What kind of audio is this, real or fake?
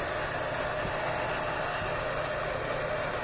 real